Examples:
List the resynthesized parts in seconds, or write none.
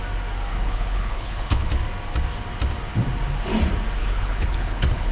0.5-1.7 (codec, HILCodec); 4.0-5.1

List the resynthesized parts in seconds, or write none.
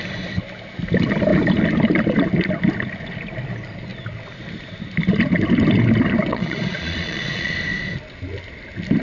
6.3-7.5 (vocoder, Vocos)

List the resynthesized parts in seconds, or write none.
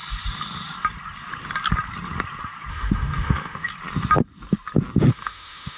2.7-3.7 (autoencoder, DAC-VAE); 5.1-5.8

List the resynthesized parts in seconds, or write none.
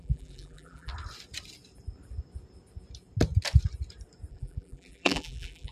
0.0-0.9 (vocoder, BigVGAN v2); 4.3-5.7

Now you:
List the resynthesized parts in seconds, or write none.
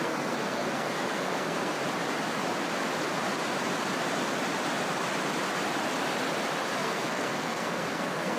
0.0-1.8 (codec, SNAC); 6.8-8.4